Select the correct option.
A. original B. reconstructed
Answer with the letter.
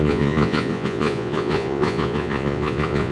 B